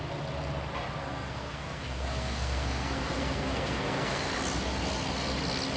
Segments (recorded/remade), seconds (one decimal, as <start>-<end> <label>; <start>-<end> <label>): 0.0-1.0 recorded; 1.0-4.3 remade; 4.3-5.8 recorded